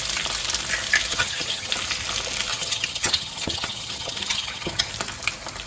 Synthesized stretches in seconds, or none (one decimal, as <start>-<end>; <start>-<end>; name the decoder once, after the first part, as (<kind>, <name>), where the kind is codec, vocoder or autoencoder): 1.1-1.7 (vocoder, HiFi-GAN); 2.5-4.9